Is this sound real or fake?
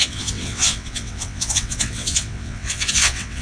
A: fake